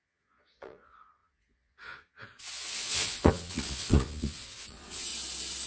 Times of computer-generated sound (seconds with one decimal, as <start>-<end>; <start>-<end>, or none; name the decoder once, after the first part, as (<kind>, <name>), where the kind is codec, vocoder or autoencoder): 0.0-5.1 (vocoder, Vocos)

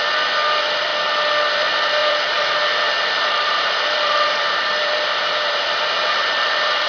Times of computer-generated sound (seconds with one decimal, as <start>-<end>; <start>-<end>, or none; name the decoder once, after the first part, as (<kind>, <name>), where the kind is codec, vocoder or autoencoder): 0.0-0.9 (vocoder, BigVGAN v2); 1.5-6.9

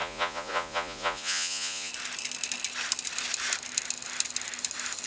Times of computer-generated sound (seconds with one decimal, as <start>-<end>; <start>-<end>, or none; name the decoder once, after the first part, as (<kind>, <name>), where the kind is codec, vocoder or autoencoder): 0.0-1.9 (vocoder, Vocos)

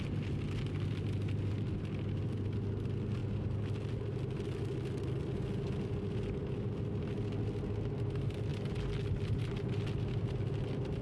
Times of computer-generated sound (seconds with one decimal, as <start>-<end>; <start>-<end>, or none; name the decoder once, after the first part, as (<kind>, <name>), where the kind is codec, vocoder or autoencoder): none

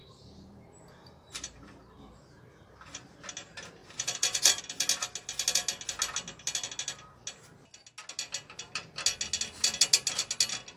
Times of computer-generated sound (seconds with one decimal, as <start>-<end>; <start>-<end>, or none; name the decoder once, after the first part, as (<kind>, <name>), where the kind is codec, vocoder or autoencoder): 0.0-3.2 (vocoder, BigVGAN v2); 3.8-4.6

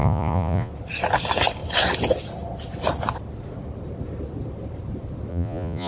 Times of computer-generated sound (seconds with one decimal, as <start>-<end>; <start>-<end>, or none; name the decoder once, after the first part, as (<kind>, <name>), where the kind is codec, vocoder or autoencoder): 0.0-0.7 (vocoder, Vocos); 5.3-5.9

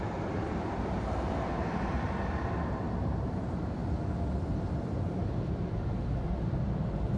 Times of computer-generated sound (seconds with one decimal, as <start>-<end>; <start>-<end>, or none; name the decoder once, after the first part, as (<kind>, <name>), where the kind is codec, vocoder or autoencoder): 0.0-3.8 (vocoder, BigVGAN v2); 4.8-7.2